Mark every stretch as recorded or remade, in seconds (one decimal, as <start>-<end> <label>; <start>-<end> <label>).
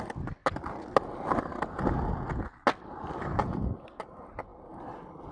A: 0.0-5.3 recorded